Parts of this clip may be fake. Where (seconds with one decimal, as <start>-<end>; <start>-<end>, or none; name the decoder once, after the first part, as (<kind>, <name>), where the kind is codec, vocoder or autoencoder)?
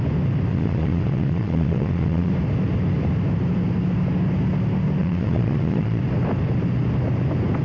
0.5-2.3 (vocoder, Vocos); 5.0-6.0